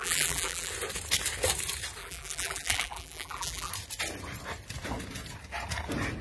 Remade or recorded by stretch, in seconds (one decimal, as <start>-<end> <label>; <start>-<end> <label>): 0.0-0.7 remade; 0.7-2.0 recorded; 2.0-3.7 remade; 3.7-6.2 recorded